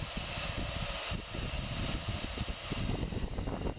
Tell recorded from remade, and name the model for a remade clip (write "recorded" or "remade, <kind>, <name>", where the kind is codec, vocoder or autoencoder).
recorded